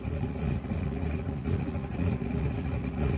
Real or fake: fake